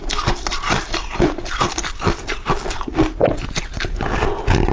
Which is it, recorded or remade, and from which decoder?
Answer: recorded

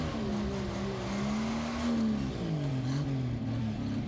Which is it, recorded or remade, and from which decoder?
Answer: recorded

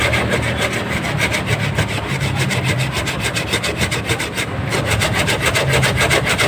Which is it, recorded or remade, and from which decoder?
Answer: recorded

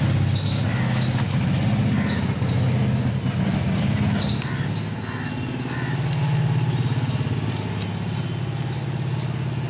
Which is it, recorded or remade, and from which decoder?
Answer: recorded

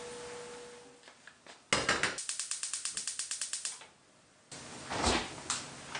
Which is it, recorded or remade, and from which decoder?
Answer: recorded